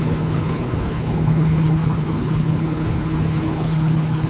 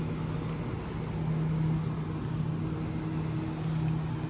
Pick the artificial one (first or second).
first